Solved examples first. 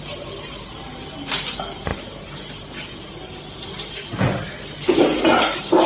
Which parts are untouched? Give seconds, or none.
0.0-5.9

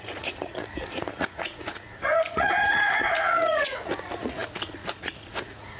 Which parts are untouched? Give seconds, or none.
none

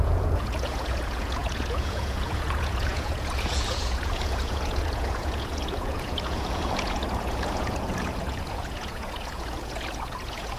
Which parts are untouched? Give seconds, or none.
none

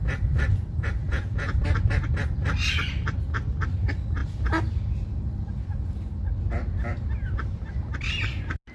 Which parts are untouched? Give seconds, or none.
0.0-1.0; 1.6-8.7

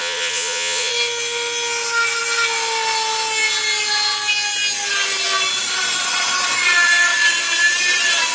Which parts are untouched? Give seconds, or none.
0.9-8.3

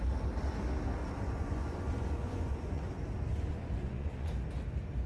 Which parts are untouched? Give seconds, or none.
0.0-1.0; 2.9-3.5; 4.3-5.1

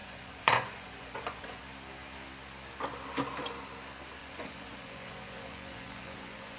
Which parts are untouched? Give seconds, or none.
1.6-4.2